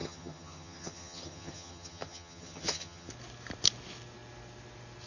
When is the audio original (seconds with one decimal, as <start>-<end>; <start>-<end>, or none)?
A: 3.1-5.1